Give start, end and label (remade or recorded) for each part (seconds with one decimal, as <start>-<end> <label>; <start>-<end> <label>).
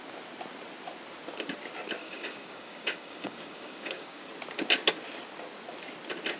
0.0-2.0 recorded; 2.0-4.3 remade; 4.3-6.4 recorded